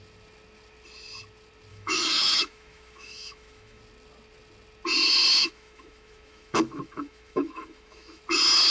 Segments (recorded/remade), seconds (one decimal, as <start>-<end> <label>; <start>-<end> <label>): 0.0-1.7 recorded; 1.7-3.8 remade; 3.8-5.4 recorded; 5.4-8.2 remade; 8.2-8.7 recorded